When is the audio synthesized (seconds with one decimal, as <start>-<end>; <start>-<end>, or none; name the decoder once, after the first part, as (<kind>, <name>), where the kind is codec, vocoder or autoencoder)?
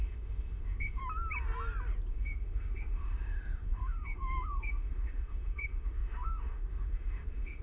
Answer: 0.0-1.0 (autoencoder, DAC-VAE); 2.1-7.6